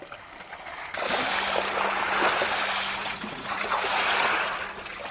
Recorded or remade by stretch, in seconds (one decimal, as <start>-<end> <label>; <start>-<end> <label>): 0.0-3.0 recorded; 3.0-4.6 remade; 4.6-5.1 recorded